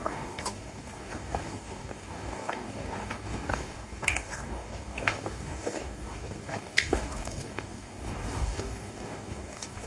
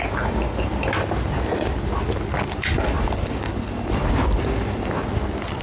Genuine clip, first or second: second